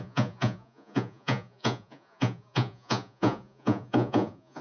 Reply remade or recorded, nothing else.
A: remade